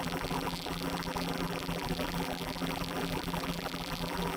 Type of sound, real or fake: fake